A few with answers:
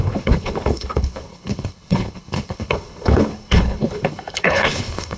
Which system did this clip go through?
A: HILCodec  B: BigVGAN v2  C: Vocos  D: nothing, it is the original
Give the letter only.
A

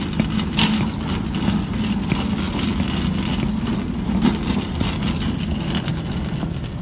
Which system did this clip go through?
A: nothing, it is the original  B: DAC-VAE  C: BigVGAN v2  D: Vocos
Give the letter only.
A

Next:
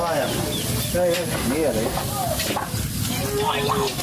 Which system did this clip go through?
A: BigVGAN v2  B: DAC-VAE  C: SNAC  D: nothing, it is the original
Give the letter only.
D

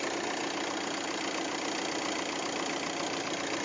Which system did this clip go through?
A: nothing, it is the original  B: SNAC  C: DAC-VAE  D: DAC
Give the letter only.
A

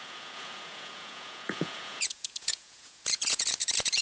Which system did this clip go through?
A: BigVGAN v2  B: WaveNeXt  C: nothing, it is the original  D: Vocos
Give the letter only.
D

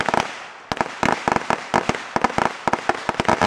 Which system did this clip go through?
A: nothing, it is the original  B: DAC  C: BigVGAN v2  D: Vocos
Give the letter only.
A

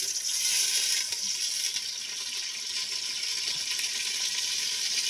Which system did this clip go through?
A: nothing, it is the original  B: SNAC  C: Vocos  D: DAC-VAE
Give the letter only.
A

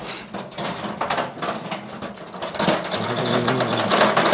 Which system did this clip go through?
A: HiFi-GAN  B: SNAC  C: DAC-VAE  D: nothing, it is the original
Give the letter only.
D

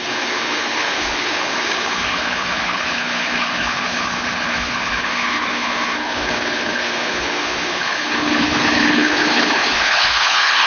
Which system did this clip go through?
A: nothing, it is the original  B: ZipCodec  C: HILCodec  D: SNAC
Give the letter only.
C